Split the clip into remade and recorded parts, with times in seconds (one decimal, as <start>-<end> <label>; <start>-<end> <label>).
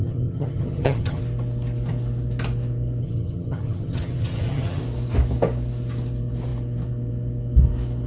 0.0-1.2 remade; 1.2-3.0 recorded; 3.0-4.8 remade; 4.8-8.1 recorded